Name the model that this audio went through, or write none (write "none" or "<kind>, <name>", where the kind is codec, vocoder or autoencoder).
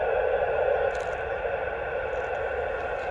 none